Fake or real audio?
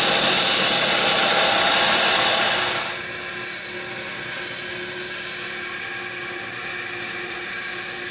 real